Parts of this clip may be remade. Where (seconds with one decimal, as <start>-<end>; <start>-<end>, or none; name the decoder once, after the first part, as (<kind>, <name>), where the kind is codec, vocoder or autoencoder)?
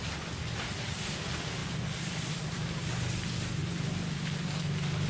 none